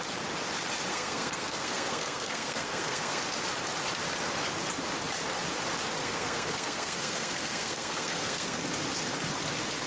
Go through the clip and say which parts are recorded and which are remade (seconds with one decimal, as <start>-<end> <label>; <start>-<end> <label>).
0.0-0.9 recorded; 0.9-3.2 remade; 3.2-6.0 recorded; 6.0-8.6 remade; 8.6-9.9 recorded